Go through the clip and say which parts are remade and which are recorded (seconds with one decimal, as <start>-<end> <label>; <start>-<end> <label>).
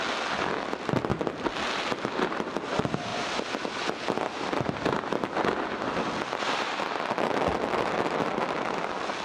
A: 0.0-9.2 recorded